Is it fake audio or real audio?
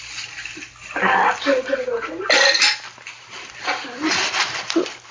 fake